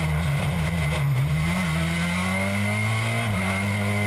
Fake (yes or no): no